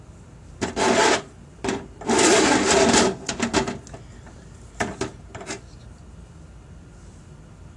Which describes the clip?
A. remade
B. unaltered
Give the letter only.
B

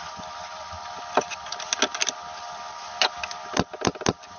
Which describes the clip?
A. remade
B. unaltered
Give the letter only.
B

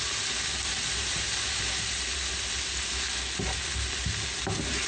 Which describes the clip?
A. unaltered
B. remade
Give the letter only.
A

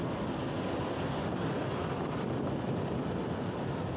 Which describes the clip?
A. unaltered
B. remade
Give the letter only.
A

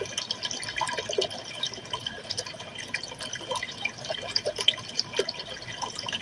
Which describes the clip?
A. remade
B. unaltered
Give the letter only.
B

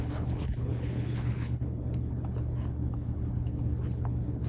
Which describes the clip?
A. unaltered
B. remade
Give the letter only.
B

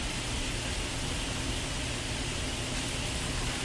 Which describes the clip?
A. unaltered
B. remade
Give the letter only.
A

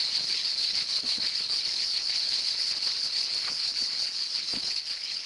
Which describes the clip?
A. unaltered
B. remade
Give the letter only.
B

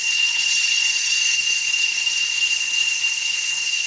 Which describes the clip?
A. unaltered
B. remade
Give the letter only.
B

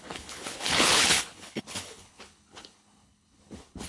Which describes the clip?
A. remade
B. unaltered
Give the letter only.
A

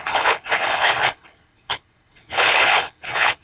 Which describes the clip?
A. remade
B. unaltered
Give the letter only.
A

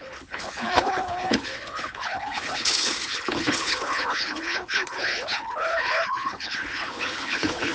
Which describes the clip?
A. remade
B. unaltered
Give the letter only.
A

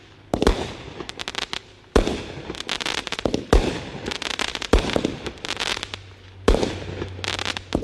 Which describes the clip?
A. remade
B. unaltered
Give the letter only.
B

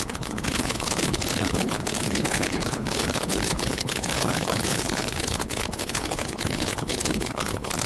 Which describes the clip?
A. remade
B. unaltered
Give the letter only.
A